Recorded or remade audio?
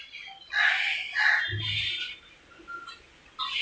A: recorded